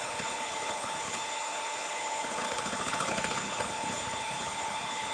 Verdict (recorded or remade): remade